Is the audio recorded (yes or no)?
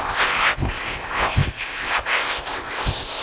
no